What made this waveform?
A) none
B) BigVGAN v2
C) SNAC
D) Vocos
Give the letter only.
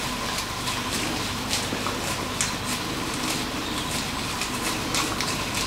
A